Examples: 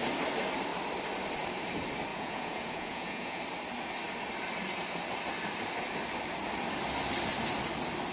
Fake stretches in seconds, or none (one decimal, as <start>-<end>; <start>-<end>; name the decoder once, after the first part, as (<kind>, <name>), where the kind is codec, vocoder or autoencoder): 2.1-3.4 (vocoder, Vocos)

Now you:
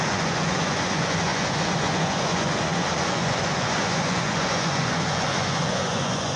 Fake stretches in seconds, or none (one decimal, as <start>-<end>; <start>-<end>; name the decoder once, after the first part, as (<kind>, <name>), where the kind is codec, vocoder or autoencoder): 0.0-6.4 (vocoder, Vocos)

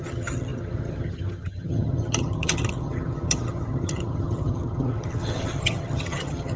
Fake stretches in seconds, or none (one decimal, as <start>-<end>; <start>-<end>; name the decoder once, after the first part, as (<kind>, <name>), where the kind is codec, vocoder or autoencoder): 0.0-6.6 (vocoder, HiFi-GAN)

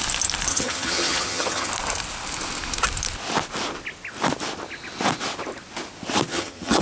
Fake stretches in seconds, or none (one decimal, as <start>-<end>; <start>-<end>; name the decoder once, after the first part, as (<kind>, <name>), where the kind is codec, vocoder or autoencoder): 0.5-1.7 (vocoder, HiFi-GAN); 6.3-6.8

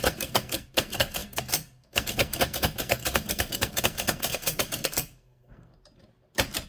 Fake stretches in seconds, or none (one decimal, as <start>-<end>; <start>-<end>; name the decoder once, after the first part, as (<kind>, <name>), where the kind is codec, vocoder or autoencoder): 0.0-5.7 (codec, SNAC)

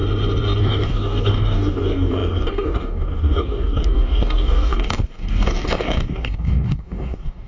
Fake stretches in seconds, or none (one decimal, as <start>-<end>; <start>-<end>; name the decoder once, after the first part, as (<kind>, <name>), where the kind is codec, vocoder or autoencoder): 0.6-7.5 (codec, DAC)

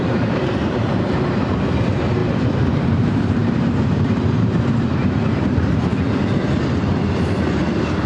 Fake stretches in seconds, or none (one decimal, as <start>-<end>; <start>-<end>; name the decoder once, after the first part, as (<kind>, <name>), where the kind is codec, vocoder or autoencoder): 0.0-2.2 (vocoder, BigVGAN v2); 2.7-5.9